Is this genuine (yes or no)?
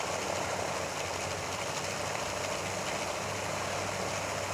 yes